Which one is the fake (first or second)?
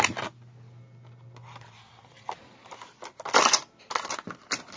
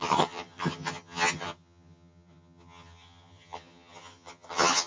second